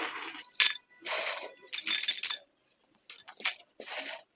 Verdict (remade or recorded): recorded